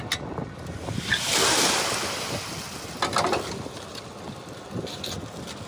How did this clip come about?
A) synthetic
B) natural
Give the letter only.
B